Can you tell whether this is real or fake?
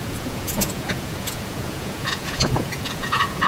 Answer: fake